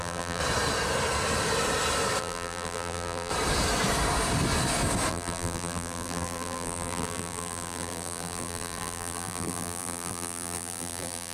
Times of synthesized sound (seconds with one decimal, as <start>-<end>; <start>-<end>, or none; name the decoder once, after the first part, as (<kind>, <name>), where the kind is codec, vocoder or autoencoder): 0.0-0.4 (vocoder, BigVGAN v2); 2.2-3.3; 5.1-11.3